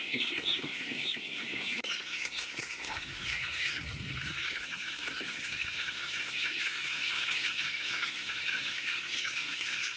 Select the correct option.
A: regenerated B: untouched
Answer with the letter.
A